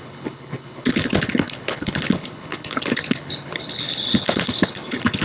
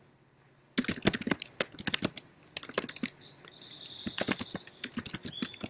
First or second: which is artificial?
first